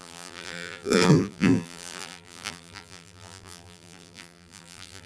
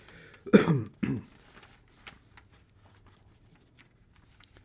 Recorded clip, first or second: second